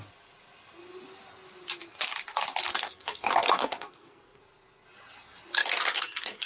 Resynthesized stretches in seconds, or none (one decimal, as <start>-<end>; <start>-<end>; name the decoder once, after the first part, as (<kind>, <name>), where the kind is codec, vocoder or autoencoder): 2.7-4.4 (codec, SNAC); 5.6-6.5